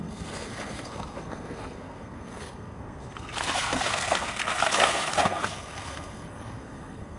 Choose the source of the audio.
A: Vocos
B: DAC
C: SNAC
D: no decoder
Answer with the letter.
C